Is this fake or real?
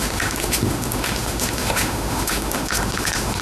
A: fake